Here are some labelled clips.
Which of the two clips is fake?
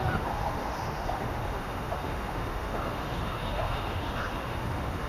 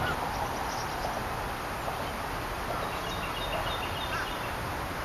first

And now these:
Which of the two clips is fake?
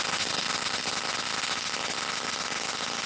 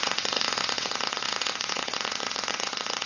second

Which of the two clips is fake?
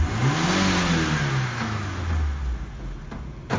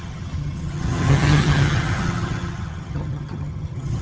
second